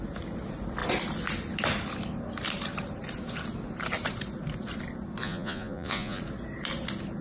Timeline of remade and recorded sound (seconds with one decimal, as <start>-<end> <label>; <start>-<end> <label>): 0.0-5.2 recorded; 5.2-6.2 remade; 6.2-7.2 recorded